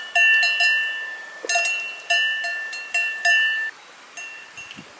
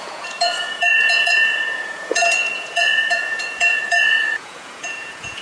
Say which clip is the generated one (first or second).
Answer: second